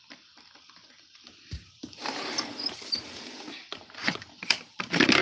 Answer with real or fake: fake